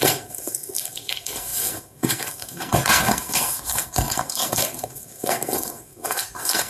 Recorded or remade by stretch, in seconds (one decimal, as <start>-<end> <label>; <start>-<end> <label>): 0.0-6.7 remade